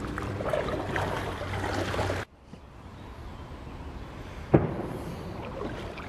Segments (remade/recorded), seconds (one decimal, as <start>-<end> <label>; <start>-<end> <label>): 0.0-0.5 remade; 0.5-1.7 recorded; 1.7-6.1 remade